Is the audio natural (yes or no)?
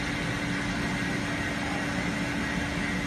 yes